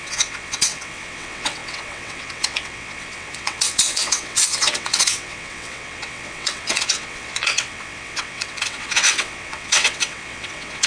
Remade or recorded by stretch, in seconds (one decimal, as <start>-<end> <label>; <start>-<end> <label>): 0.0-10.9 remade

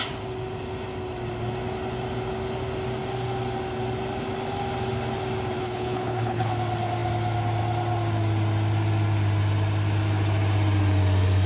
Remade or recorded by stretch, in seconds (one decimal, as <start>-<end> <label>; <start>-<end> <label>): 0.0-5.6 recorded; 5.6-6.5 remade; 6.5-11.5 recorded

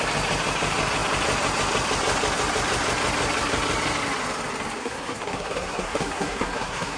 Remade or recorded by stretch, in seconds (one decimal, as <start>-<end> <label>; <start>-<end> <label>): 0.0-4.8 recorded; 4.8-7.0 remade

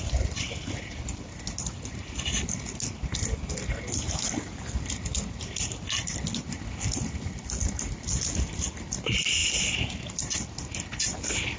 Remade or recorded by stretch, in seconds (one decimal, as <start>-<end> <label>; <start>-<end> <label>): 0.0-11.6 recorded

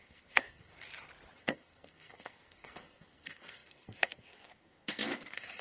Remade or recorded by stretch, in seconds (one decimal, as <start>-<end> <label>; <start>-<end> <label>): 0.0-0.7 remade; 0.7-1.4 recorded; 1.4-5.6 remade